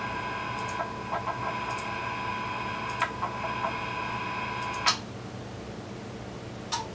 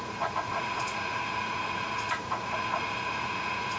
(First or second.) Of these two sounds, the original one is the first